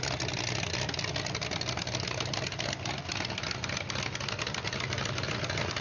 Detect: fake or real real